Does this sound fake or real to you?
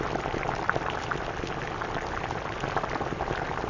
real